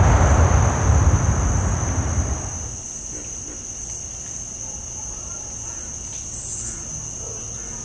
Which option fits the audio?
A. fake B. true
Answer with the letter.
B